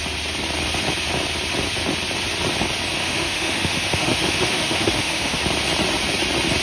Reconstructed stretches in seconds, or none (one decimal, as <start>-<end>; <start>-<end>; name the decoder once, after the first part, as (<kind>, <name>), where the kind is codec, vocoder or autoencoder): 3.0-5.4 (autoencoder, DAC-VAE)